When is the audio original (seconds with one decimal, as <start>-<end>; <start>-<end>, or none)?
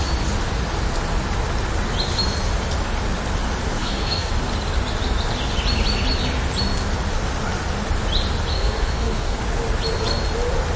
0.0-3.8; 4.3-8.5; 9.4-10.8